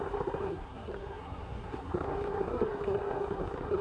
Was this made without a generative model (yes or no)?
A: no